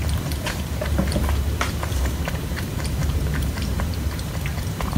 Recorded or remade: remade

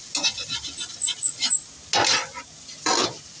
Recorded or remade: recorded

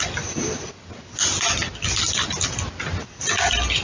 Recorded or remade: recorded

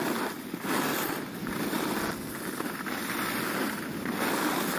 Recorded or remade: recorded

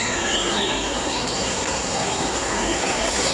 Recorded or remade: remade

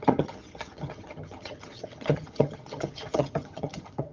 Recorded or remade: remade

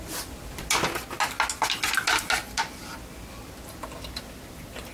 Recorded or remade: recorded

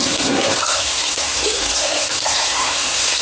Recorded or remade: remade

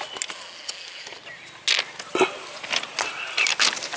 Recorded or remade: recorded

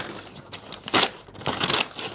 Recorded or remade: recorded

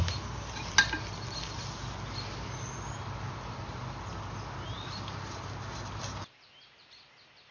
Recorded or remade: recorded